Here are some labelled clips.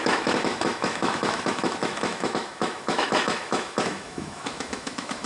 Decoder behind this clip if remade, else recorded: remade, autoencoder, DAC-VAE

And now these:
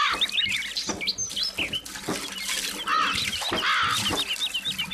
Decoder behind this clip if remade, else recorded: recorded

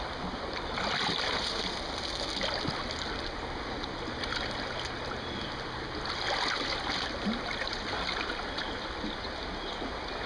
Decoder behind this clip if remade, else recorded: recorded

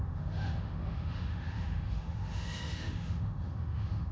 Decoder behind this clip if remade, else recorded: remade, autoencoder, DAC-VAE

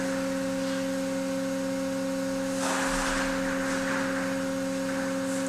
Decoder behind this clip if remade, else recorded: recorded